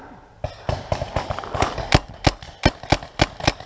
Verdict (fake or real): real